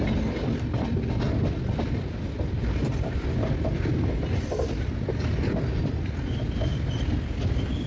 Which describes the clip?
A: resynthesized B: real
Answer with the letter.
B